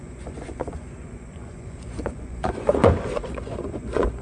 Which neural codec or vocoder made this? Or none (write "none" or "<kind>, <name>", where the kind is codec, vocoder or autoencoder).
vocoder, Vocos